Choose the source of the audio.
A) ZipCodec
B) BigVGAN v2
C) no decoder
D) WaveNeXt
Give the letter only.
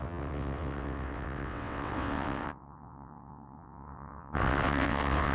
D